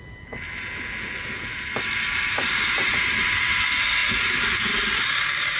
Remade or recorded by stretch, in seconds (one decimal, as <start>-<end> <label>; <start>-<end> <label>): 0.0-5.6 recorded